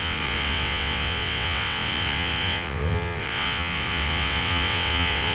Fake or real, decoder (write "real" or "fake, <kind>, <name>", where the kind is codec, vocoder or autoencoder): fake, vocoder, WaveNeXt